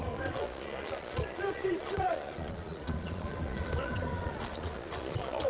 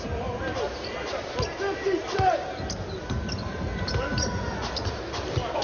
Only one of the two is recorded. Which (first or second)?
second